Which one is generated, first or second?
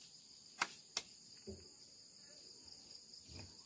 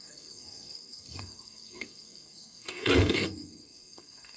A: second